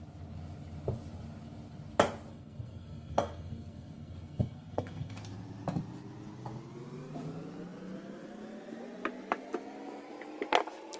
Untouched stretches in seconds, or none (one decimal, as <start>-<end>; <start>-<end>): 0.0-2.3; 5.2-11.0